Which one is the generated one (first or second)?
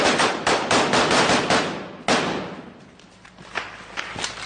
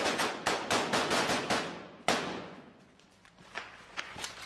second